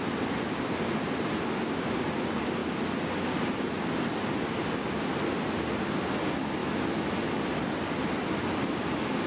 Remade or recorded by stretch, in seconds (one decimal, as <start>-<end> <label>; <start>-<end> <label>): 0.0-6.6 recorded; 6.6-7.2 remade; 7.2-9.3 recorded